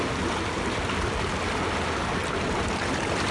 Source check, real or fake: real